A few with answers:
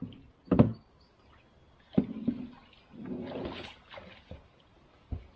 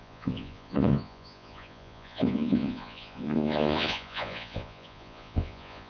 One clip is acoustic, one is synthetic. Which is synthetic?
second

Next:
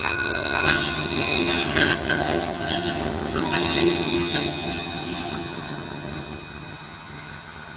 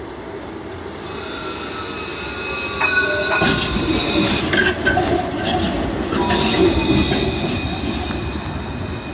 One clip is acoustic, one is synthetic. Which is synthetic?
first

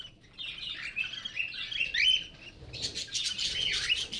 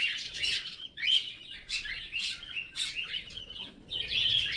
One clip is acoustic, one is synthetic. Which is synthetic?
second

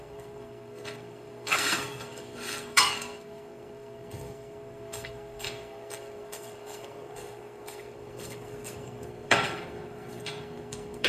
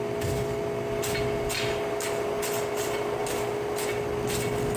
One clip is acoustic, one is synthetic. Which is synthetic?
first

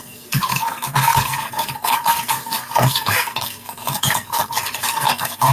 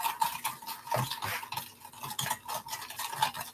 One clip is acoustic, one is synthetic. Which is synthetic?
first